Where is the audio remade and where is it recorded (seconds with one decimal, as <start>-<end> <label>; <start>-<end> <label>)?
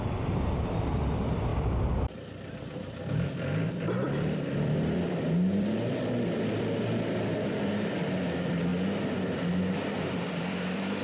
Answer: 0.0-8.7 remade; 8.7-9.8 recorded; 9.8-11.0 remade